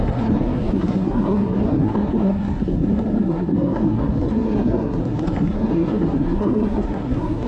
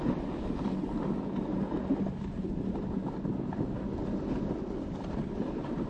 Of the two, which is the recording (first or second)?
second